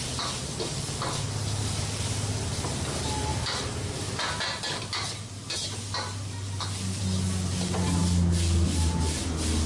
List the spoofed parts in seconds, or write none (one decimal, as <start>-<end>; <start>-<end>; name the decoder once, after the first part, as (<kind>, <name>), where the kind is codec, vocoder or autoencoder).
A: none